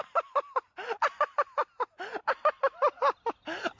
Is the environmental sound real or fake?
real